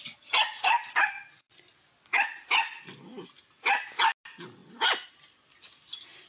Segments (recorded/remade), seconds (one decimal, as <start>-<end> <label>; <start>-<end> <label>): 0.0-6.3 recorded